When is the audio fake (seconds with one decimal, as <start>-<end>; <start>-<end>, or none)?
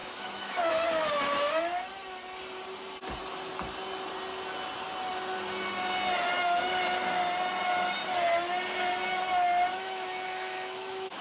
0.0-0.7; 9.7-11.2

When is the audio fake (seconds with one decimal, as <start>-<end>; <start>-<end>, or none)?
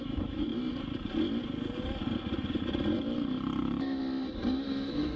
0.0-0.5; 3.6-4.0; 4.6-5.2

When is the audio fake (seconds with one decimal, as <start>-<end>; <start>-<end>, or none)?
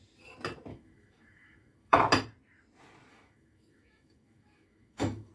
0.7-2.0; 3.1-5.3